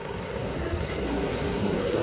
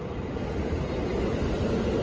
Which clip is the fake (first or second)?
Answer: first